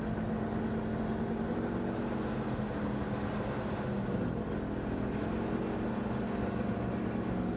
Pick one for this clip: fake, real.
real